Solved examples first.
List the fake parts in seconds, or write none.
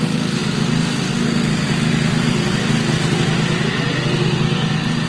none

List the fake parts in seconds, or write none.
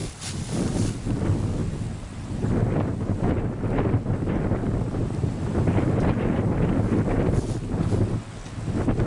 0.0-1.2; 1.6-3.1; 5.0-6.9